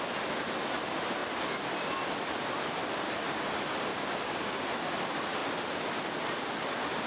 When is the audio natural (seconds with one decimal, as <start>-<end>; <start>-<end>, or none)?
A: 0.0-3.9; 4.6-7.1